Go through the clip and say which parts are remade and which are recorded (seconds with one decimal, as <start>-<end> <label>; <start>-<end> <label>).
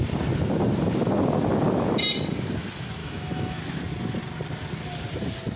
0.0-3.0 recorded; 3.0-3.6 remade; 3.6-5.6 recorded